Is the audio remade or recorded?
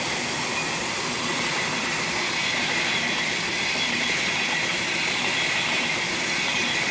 recorded